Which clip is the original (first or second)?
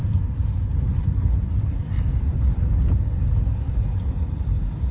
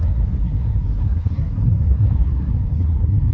first